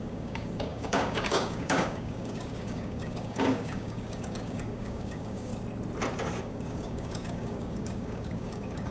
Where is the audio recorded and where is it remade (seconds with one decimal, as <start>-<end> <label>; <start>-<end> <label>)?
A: 0.0-5.5 remade; 5.5-6.4 recorded; 6.4-8.9 remade